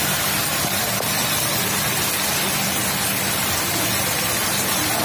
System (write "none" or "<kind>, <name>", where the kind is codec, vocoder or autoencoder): vocoder, BigVGAN v2